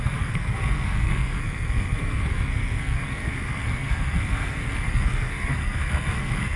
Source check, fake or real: fake